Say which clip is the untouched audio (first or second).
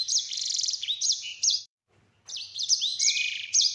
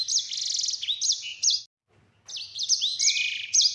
second